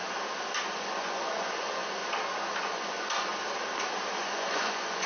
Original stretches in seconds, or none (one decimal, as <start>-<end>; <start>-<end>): 0.0-0.8; 2.0-2.6; 3.3-4.2